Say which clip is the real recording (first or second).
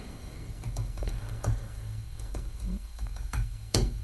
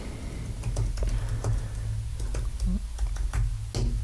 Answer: second